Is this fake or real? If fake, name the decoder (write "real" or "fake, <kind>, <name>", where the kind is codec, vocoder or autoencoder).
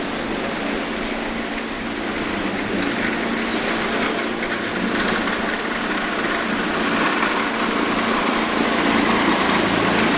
real